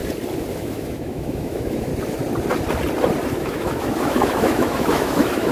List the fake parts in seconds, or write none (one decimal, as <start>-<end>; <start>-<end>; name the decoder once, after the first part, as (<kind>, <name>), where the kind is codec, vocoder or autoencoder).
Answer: 0.5-1.9 (autoencoder, DAC-VAE); 3.3-5.5